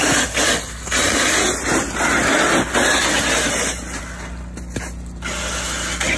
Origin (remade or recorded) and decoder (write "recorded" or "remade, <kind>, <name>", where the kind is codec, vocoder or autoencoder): recorded